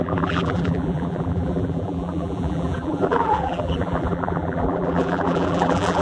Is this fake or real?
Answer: fake